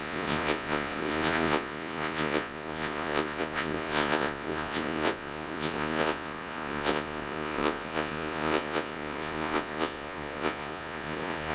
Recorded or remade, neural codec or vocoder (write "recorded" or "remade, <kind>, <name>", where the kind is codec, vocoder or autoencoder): remade, vocoder, Vocos